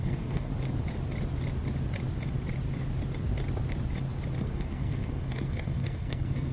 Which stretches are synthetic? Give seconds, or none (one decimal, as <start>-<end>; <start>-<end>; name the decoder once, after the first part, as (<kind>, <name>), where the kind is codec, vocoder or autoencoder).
0.0-0.5 (codec, SNAC); 4.4-6.5